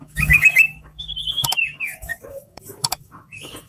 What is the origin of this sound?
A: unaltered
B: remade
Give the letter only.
B